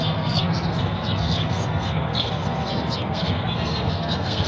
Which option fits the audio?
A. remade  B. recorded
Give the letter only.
A